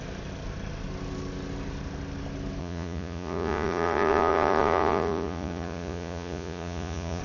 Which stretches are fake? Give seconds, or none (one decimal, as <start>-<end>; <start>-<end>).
2.6-7.2